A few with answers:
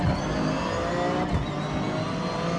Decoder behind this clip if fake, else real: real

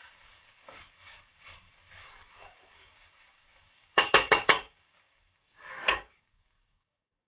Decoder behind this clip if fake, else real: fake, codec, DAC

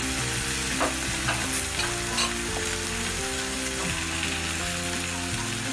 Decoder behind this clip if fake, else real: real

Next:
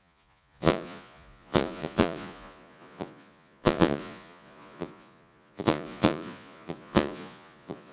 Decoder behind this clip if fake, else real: fake, vocoder, Vocos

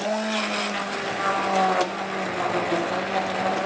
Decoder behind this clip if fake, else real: real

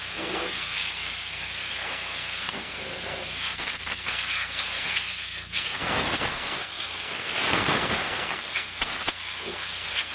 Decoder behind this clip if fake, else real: fake, codec, SNAC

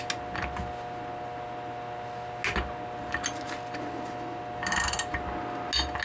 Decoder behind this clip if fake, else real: real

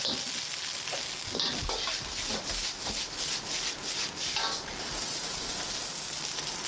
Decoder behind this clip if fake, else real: real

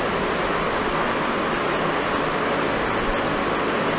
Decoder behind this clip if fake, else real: real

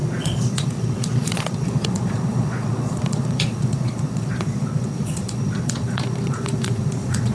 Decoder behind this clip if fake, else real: fake, vocoder, Vocos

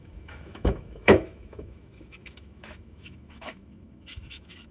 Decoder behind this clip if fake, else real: fake, autoencoder, DAC-VAE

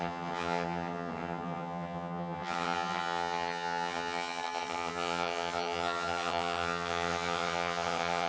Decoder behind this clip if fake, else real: fake, vocoder, HiFi-GAN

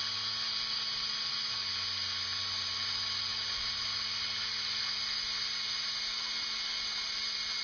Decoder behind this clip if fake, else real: real